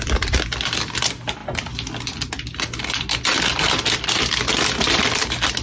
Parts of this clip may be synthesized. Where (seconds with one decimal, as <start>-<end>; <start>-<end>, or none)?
none